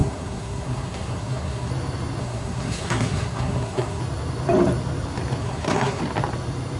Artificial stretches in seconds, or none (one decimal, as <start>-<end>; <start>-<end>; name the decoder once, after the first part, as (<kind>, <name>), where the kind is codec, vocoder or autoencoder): 0.0-1.7 (codec, SNAC); 2.2-4.0; 5.4-6.0